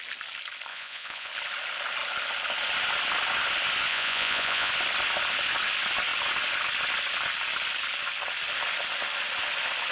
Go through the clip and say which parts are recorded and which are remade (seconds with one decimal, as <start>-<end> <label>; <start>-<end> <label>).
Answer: 0.0-0.7 recorded; 0.7-1.3 remade; 1.3-3.9 recorded; 3.9-4.7 remade; 4.7-9.9 recorded